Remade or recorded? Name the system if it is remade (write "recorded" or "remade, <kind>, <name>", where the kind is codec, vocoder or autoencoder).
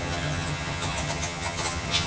remade, vocoder, HiFi-GAN